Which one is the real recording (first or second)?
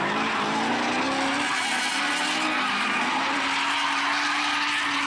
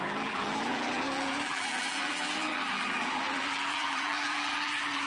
first